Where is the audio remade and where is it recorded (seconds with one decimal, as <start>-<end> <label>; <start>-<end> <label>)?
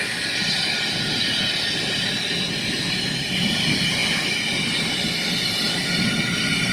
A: 0.0-6.7 recorded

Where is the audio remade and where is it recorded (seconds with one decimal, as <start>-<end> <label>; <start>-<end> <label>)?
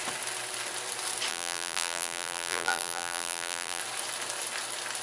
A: 0.0-1.3 recorded; 1.3-3.8 remade; 3.8-5.0 recorded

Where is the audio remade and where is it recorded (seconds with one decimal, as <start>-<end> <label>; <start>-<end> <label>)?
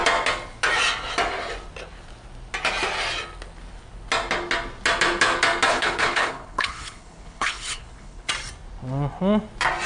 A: 0.0-5.7 recorded; 5.7-8.3 remade; 8.3-9.9 recorded